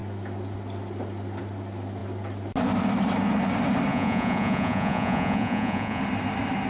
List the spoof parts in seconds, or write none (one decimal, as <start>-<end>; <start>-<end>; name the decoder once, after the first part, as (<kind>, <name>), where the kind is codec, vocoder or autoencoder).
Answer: 3.9-6.0 (vocoder, Vocos)